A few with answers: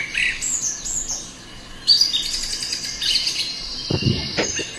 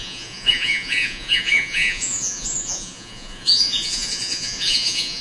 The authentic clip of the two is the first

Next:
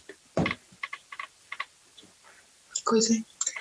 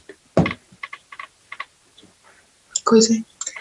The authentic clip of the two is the second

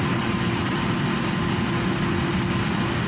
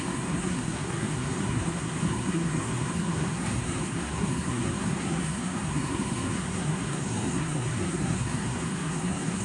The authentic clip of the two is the first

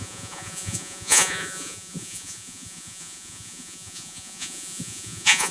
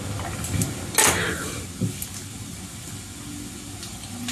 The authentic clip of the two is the second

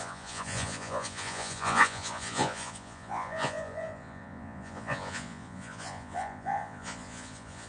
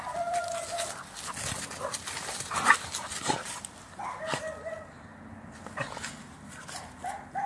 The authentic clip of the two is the second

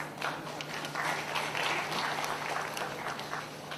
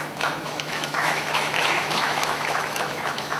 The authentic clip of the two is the first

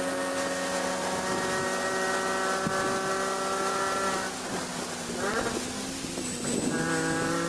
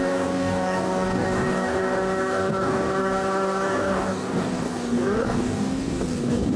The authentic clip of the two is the first